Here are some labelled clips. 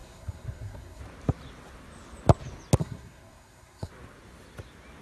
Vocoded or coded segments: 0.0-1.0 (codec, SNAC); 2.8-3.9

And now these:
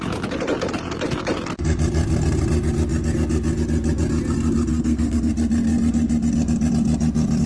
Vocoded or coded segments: 4.7-5.3 (codec, SNAC)